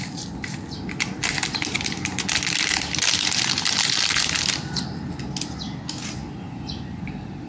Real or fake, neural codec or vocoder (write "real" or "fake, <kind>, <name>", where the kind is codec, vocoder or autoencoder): real